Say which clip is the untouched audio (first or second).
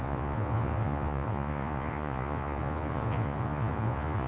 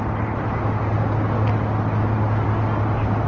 second